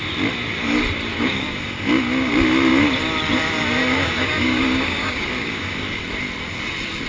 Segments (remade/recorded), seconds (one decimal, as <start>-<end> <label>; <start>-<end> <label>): 0.0-1.1 recorded; 1.1-1.9 remade; 1.9-3.8 recorded; 3.8-6.0 remade; 6.0-7.1 recorded